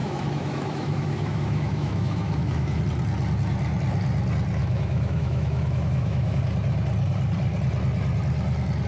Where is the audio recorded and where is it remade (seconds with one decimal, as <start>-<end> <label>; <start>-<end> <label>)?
0.0-2.8 remade; 2.8-4.6 recorded; 4.6-6.4 remade; 6.4-8.9 recorded

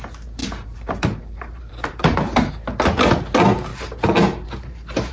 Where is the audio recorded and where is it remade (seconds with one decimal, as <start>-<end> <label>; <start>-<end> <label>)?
0.0-0.4 recorded; 0.4-2.5 remade; 2.5-3.7 recorded; 3.7-5.1 remade

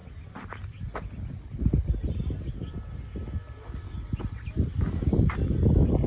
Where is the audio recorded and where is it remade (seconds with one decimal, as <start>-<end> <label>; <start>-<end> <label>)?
0.0-6.1 recorded

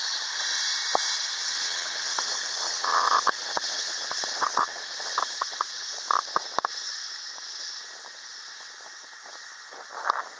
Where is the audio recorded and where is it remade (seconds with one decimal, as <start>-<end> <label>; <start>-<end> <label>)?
0.0-1.5 recorded; 1.5-5.8 remade; 5.8-10.4 recorded